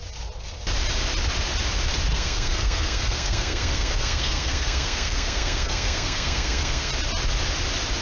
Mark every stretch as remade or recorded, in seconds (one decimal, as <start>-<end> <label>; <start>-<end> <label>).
0.0-2.1 recorded; 2.1-6.9 remade; 6.9-8.0 recorded